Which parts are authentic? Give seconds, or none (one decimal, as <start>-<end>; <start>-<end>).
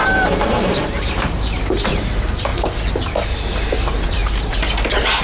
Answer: 2.5-3.8; 4.2-5.2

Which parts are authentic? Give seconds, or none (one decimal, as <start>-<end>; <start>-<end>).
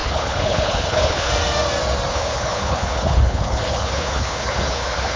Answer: 1.3-2.1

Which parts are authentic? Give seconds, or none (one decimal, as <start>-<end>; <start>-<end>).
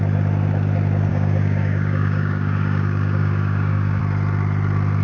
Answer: 0.0-1.1; 4.0-5.0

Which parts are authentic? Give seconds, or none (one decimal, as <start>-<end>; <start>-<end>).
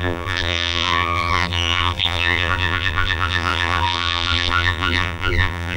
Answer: none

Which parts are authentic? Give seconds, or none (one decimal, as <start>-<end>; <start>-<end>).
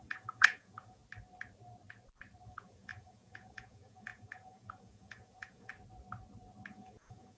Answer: 1.0-2.5; 5.7-6.7